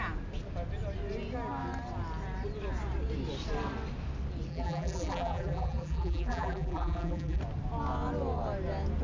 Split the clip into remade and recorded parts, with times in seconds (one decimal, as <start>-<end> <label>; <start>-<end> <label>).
0.0-4.5 recorded; 4.5-7.4 remade; 7.4-9.0 recorded